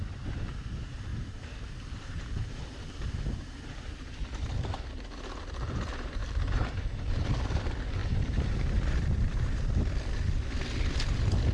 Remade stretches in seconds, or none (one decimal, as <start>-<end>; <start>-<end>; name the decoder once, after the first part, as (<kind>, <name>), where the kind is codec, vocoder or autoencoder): 1.1-3.9 (vocoder, BigVGAN v2); 6.2-7.3; 8.0-9.8